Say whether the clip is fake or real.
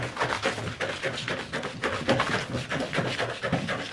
real